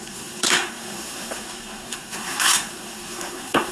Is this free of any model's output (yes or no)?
no